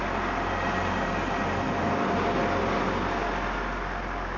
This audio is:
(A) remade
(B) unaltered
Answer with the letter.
B